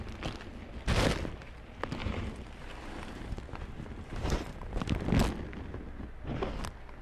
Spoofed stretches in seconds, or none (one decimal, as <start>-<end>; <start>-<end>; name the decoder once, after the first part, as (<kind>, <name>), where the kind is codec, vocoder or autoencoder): 2.0-4.9 (vocoder, BigVGAN v2)